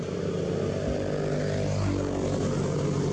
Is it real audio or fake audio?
real